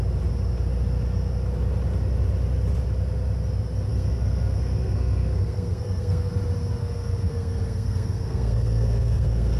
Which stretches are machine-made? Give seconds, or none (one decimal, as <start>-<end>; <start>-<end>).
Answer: 3.9-6.3; 6.8-9.6